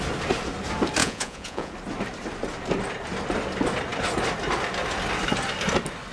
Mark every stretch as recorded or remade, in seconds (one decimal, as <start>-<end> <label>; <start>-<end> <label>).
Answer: 0.0-1.0 recorded; 1.0-1.7 remade; 1.7-6.1 recorded